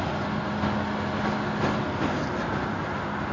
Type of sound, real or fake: real